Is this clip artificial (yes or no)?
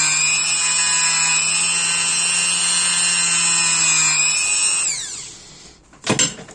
no